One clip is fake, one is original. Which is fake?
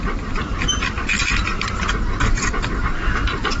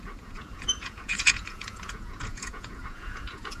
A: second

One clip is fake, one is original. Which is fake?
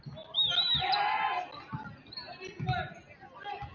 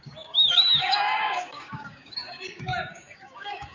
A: second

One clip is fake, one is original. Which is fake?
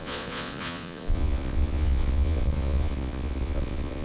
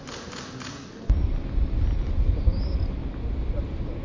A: first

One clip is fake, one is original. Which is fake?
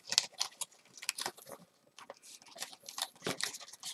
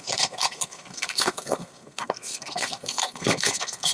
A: second